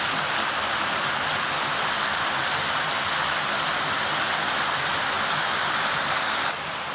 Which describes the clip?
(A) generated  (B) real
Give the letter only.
B